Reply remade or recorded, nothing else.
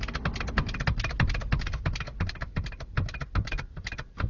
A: recorded